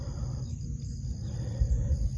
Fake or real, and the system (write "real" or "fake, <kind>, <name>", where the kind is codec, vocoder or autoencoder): real